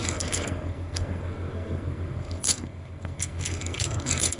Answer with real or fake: fake